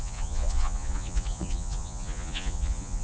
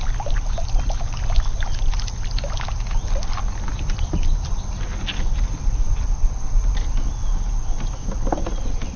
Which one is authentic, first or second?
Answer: second